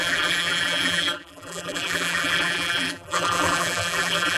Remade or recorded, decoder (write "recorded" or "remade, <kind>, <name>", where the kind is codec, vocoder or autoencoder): remade, vocoder, BigVGAN v2